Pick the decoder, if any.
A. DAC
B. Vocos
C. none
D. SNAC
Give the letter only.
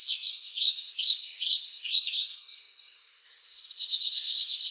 D